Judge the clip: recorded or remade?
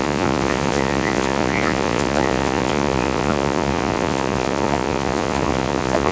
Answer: remade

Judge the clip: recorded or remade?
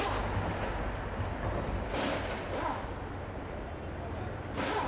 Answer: recorded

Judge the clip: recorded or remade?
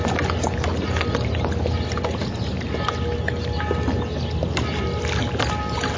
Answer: recorded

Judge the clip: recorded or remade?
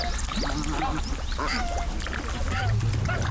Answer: recorded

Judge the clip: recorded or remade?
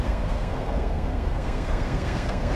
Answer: remade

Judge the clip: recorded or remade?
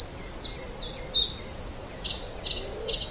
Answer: recorded